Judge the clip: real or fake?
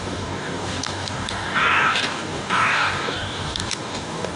fake